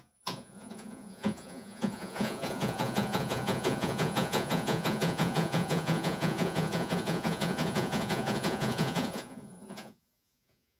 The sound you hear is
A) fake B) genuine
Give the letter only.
A